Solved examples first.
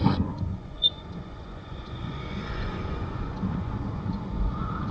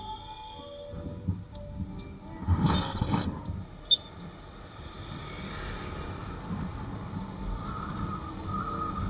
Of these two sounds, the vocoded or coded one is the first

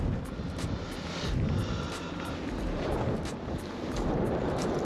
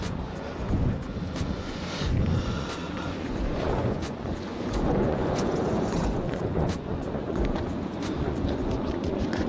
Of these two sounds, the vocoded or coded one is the second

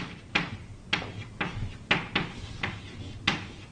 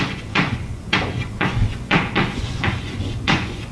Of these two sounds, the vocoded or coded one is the second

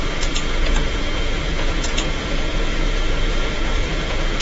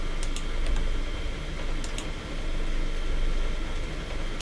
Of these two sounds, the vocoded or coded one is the first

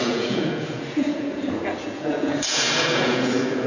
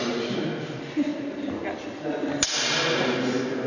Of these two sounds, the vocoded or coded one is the first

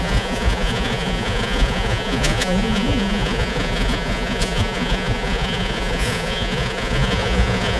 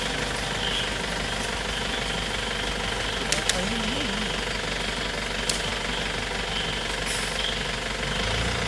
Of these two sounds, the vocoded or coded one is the first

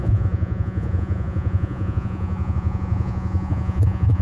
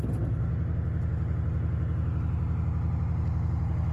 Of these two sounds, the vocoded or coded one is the first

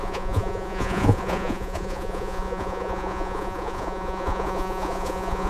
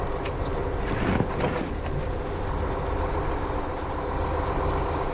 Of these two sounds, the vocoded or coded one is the first